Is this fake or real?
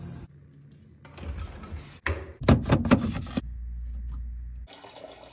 real